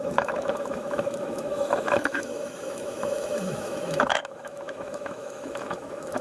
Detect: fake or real fake